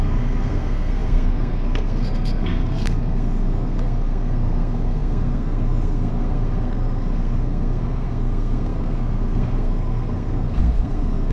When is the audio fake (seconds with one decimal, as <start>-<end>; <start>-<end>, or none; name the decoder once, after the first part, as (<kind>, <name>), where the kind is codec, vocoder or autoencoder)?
0.0-11.3 (codec, SNAC)